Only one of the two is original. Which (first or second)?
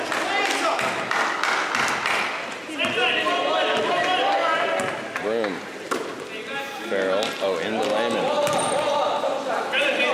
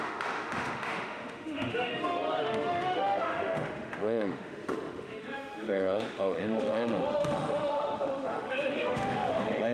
first